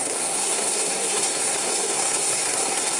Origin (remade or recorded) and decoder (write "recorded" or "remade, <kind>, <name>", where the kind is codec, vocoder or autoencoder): remade, codec, SNAC